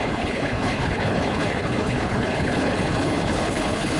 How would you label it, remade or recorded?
remade